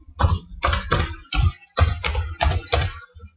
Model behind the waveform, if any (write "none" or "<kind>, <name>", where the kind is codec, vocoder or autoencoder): none